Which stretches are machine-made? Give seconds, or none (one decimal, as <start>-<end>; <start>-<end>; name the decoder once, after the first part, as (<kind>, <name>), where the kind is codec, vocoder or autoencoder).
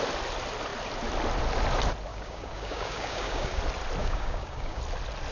2.1-3.6 (codec, DAC); 4.0-4.8